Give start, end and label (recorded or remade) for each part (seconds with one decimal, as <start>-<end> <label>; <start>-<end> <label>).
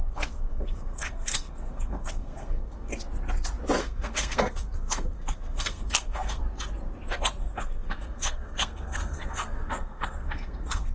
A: 0.0-2.9 remade; 2.9-3.8 recorded; 3.8-6.4 remade; 6.4-7.4 recorded; 7.4-10.9 remade